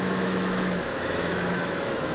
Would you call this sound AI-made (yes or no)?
yes